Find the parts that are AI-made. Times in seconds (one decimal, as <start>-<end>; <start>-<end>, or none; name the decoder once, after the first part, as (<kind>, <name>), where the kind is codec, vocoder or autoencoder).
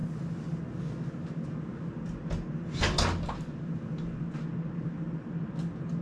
none